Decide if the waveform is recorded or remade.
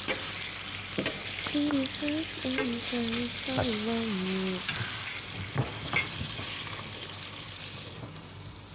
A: recorded